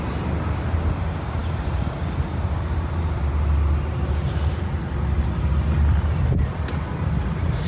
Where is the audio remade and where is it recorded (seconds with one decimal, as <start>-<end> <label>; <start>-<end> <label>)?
0.0-7.7 recorded